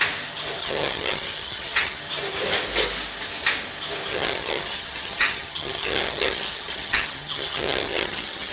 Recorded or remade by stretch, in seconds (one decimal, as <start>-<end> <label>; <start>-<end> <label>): 0.0-0.6 recorded; 0.6-2.0 remade; 2.0-4.1 recorded; 4.1-8.5 remade